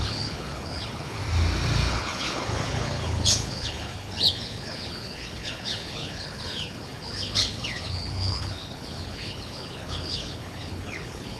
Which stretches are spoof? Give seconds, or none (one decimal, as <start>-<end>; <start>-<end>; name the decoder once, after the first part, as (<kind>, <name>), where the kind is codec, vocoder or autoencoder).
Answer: 0.0-1.2 (codec, HILCodec); 1.9-11.4